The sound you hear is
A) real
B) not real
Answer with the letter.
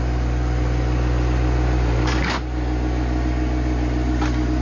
A